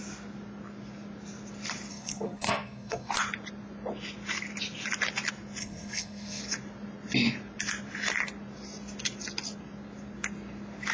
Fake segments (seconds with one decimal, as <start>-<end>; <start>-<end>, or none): 1.9-3.1; 5.6-6.4